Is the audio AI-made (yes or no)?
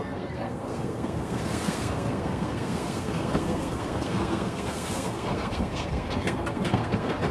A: yes